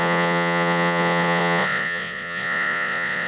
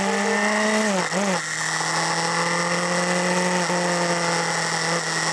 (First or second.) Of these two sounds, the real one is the second